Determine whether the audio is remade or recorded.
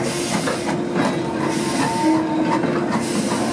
recorded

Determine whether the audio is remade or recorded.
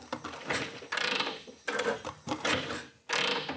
recorded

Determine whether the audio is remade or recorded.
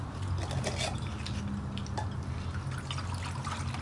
recorded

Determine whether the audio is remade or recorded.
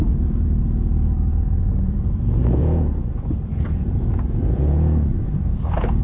remade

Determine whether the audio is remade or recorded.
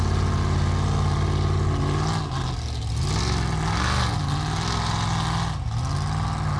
recorded